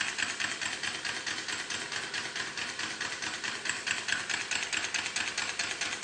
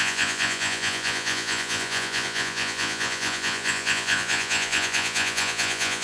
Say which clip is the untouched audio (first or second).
first